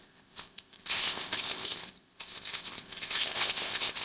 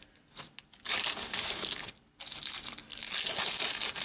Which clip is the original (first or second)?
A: second